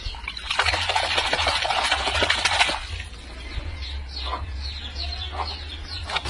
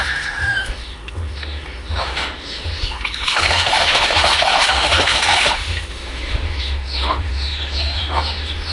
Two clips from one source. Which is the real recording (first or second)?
first